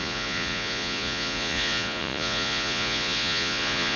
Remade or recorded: remade